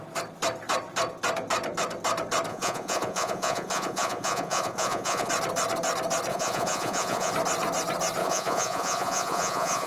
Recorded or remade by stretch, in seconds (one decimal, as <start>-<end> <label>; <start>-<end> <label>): 0.0-2.5 recorded; 2.5-5.3 remade; 5.3-6.3 recorded; 6.3-7.3 remade; 7.3-8.2 recorded; 8.2-9.9 remade